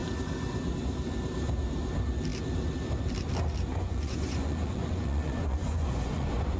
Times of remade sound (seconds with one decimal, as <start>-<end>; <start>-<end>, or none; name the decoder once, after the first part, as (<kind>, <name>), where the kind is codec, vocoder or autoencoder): 3.7-6.6 (vocoder, Vocos)